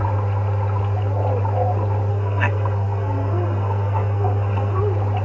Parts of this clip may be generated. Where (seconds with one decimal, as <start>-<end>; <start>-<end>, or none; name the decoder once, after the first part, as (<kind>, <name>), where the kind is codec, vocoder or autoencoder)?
2.1-4.8 (codec, SNAC)

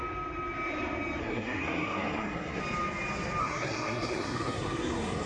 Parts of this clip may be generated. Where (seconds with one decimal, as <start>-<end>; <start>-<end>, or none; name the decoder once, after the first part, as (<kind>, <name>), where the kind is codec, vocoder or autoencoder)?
1.2-2.6 (codec, SNAC); 3.4-5.3

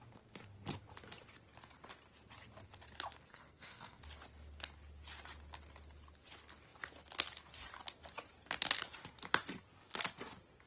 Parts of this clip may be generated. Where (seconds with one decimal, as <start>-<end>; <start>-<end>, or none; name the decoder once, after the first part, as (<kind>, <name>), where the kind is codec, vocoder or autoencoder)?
3.3-4.0 (codec, SNAC)

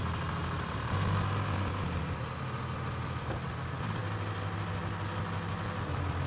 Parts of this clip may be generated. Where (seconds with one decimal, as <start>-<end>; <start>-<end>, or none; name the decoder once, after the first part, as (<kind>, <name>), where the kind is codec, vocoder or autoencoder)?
none

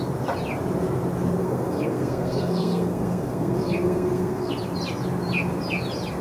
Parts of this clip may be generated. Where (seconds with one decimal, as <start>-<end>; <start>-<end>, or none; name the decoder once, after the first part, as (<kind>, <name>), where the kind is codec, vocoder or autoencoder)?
1.4-4.5 (codec, SNAC)